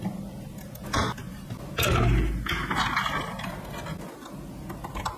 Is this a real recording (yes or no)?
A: yes